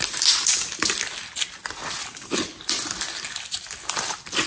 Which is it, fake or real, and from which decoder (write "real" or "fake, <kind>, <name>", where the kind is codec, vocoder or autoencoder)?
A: real